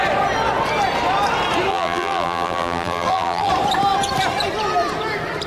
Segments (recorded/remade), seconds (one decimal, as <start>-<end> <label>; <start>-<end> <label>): 0.0-1.7 recorded; 1.7-3.5 remade; 3.5-5.5 recorded